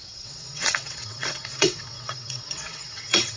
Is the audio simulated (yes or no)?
yes